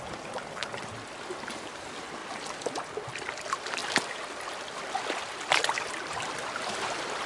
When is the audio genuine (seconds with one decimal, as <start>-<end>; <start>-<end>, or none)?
0.0-3.8; 6.8-7.3